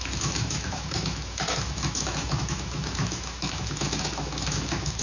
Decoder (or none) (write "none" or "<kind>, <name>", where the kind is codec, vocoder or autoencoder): autoencoder, DAC-VAE